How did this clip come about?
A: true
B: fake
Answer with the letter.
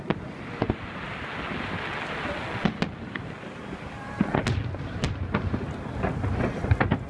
A